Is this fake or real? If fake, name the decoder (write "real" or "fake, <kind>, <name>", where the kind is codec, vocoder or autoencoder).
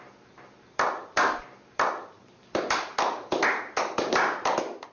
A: fake, vocoder, BigVGAN v2